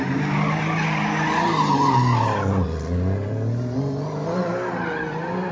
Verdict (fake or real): real